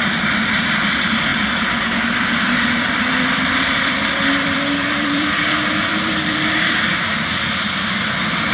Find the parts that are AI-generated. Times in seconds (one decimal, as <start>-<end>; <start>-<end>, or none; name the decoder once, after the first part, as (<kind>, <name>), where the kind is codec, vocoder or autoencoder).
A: 0.0-1.3 (vocoder, BigVGAN v2); 2.3-8.5